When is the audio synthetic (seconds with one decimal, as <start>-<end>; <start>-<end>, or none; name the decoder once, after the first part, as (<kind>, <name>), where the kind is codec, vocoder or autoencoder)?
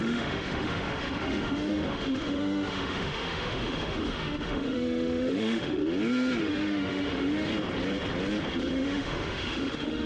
0.0-5.8 (autoencoder, DAC-VAE); 6.4-7.5; 8.7-10.1